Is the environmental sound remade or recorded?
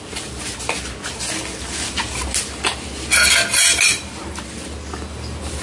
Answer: recorded